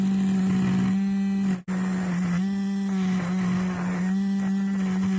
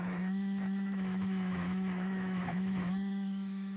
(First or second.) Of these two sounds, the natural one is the first